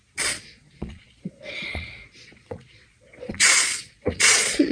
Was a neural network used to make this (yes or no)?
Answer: yes